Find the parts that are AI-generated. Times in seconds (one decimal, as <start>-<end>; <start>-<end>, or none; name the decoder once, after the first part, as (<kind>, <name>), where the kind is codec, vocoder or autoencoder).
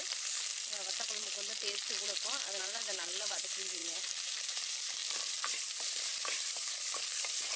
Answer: 0.0-0.5 (vocoder, BigVGAN v2); 2.6-5.0; 5.5-7.6